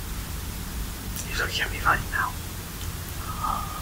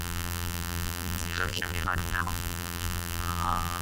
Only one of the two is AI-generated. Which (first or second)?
second